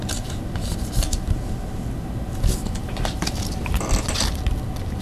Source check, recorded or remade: recorded